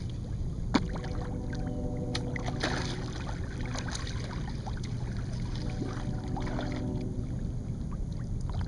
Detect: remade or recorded recorded